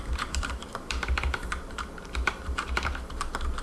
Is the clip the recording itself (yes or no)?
no